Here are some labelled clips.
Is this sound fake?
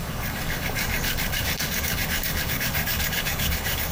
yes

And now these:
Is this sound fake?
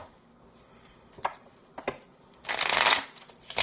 no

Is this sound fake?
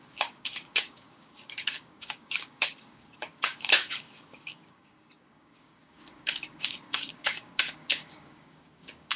yes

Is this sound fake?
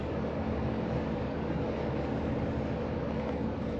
yes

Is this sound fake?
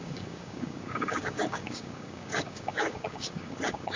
yes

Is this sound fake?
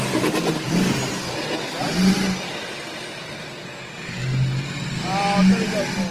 no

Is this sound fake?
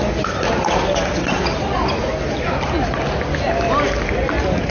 no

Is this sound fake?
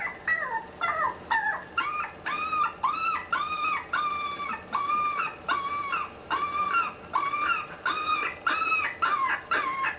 no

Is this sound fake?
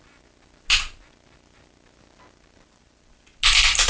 no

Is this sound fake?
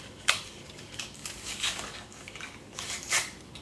yes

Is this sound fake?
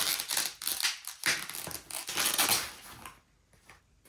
no